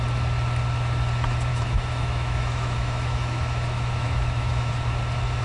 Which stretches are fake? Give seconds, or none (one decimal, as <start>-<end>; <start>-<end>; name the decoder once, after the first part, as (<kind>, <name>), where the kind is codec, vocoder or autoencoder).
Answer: 1.5-4.7 (autoencoder, DAC-VAE)